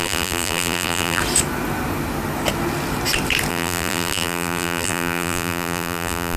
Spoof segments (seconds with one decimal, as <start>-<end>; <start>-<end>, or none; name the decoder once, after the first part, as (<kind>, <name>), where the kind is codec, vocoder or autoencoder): 0.0-1.2 (vocoder, BigVGAN v2); 3.5-6.4

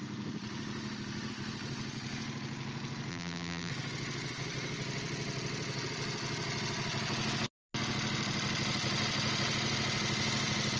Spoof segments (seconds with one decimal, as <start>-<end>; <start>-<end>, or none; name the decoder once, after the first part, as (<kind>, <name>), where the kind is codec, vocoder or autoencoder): 3.1-3.7 (vocoder, BigVGAN v2)

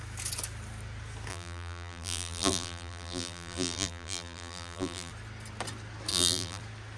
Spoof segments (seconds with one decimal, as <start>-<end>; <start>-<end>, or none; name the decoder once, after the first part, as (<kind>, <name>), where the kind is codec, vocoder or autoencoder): 1.3-5.1 (vocoder, BigVGAN v2); 6.1-6.6

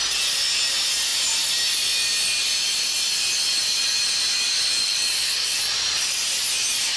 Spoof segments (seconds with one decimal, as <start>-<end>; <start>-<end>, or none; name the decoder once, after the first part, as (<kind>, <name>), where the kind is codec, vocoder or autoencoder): 4.9-6.1 (vocoder, BigVGAN v2)

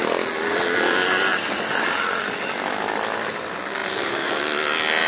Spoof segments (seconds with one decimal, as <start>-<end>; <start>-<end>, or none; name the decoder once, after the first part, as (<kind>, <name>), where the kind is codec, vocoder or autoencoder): 3.8-4.4 (vocoder, BigVGAN v2)

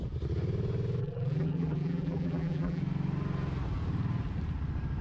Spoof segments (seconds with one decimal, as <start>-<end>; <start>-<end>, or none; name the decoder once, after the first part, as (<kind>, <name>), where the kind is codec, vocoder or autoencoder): 1.0-2.8 (vocoder, BigVGAN v2)

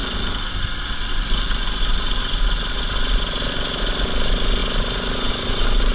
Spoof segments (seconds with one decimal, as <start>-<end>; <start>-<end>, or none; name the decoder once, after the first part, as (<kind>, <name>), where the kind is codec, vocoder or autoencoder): 3.5-4.6 (vocoder, BigVGAN v2); 5.3-5.9